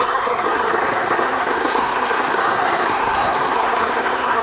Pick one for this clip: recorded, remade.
remade